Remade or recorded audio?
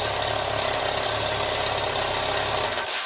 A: recorded